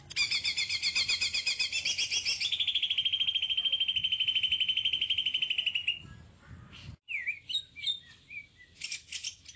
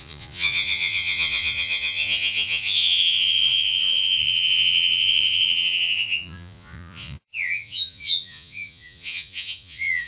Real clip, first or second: first